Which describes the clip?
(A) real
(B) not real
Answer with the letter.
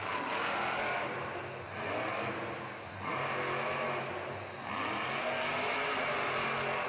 A